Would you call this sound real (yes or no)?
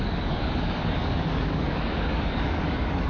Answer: no